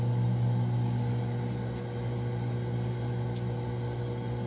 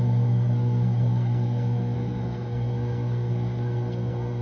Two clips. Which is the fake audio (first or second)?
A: second